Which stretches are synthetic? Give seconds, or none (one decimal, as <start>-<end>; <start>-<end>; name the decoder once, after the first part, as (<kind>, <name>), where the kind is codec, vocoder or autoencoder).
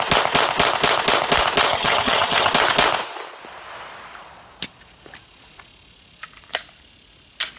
1.7-2.5 (vocoder, HiFi-GAN)